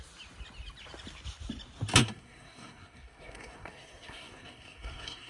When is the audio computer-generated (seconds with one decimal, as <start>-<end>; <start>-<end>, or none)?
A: 2.0-5.3